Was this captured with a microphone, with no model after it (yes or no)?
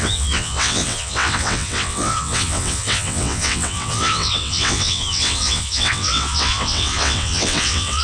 no